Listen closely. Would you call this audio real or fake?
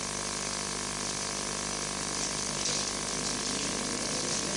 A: real